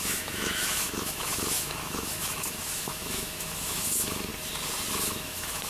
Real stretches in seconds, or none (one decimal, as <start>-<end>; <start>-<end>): 4.3-4.9